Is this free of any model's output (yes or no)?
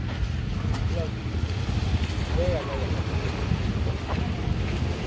yes